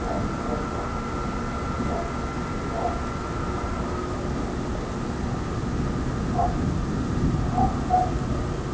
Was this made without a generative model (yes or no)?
yes